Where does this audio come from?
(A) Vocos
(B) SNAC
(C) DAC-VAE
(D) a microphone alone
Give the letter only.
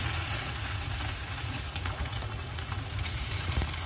A